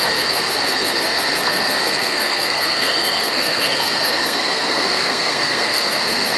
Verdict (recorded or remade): remade